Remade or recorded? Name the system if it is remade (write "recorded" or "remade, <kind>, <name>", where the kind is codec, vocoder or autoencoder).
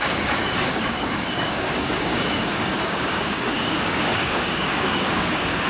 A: remade, codec, DAC